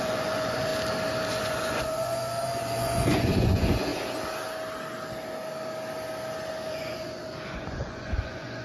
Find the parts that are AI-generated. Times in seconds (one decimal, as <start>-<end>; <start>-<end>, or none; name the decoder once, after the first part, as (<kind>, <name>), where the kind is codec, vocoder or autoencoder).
0.0-0.7 (vocoder, Vocos); 1.3-3.9; 6.7-8.6